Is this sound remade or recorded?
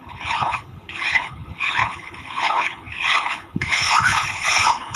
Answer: remade